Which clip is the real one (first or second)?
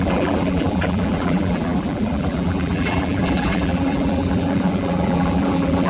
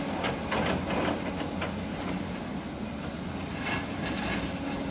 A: second